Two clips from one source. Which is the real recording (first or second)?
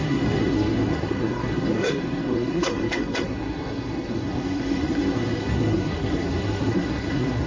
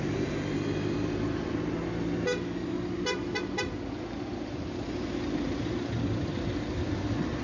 second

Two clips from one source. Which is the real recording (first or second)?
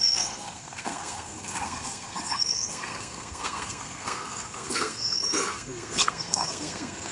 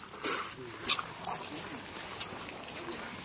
second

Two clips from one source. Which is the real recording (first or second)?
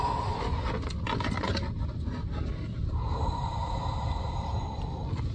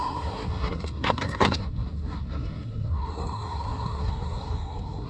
first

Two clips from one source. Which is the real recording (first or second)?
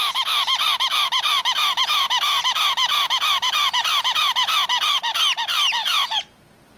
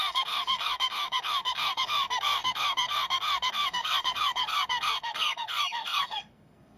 first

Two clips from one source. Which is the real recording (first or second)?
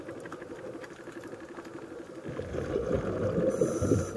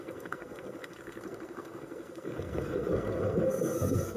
first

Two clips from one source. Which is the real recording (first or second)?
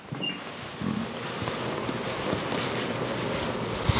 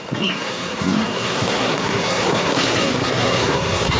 first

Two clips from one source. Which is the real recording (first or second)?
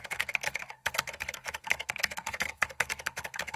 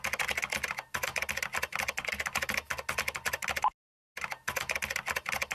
second